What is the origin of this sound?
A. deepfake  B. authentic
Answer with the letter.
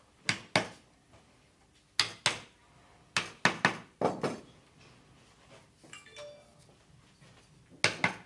B